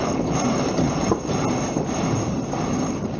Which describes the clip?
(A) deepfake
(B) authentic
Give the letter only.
B